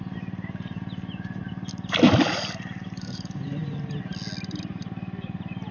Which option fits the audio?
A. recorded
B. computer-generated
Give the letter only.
A